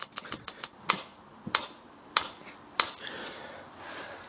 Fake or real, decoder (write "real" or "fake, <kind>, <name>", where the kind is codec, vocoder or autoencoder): real